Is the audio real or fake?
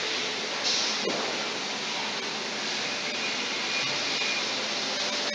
real